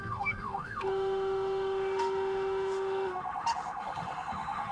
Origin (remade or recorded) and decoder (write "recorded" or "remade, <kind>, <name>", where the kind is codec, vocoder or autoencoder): remade, autoencoder, DAC-VAE